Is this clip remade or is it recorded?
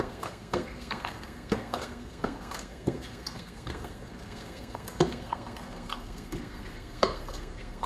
remade